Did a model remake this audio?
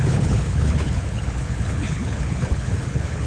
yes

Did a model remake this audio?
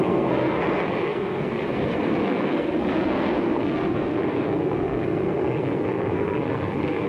yes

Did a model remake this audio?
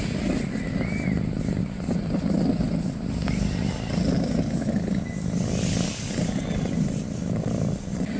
no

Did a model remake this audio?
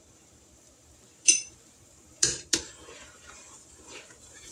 yes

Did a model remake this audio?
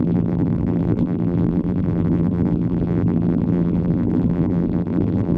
yes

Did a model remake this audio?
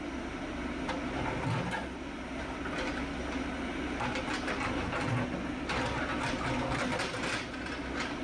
no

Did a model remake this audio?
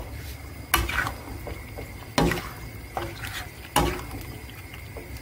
no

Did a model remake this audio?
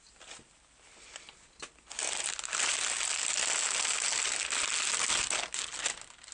no